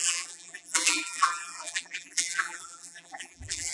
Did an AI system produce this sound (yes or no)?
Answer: yes